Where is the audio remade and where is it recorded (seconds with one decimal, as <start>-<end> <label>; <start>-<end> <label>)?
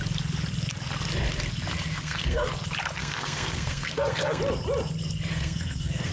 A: 0.0-1.9 recorded; 1.9-2.5 remade; 2.5-3.0 recorded; 3.0-4.4 remade; 4.4-5.3 recorded; 5.3-6.1 remade